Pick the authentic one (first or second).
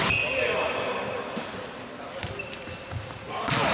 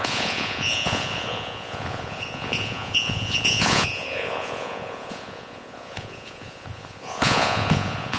first